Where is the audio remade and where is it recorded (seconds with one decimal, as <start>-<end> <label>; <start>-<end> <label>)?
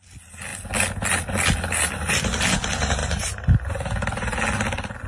0.0-5.1 recorded